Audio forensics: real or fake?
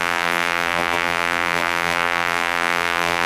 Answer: fake